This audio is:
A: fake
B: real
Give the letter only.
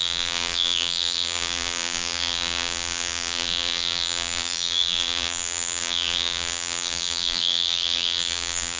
A